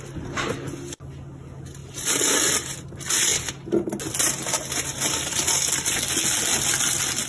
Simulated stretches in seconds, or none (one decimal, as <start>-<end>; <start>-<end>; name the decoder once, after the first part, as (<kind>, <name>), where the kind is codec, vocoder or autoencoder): none